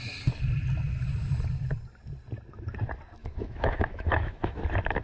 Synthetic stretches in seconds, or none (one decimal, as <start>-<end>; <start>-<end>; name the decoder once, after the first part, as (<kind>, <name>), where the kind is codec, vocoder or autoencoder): 3.2-4.6 (autoencoder, DAC-VAE)